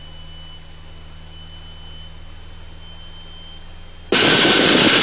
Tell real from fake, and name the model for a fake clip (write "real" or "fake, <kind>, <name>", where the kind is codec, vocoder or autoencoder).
real